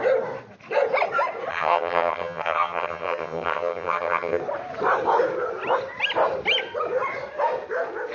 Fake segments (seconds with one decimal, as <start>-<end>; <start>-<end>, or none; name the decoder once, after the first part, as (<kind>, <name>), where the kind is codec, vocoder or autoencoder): 1.5-4.4 (vocoder, HiFi-GAN)